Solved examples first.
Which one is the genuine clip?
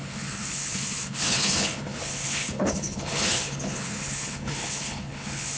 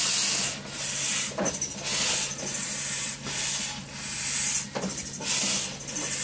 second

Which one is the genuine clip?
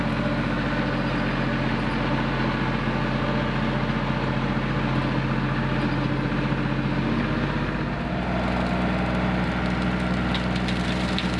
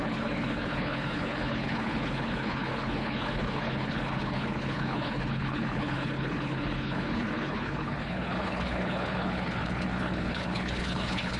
first